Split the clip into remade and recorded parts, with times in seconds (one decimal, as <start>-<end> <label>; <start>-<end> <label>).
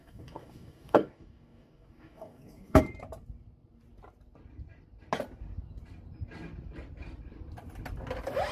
0.0-2.8 remade; 2.8-8.5 recorded